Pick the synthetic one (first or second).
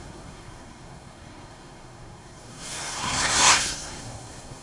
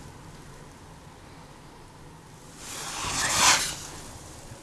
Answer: first